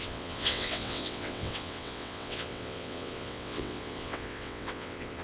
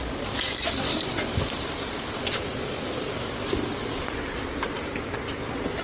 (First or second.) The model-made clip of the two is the first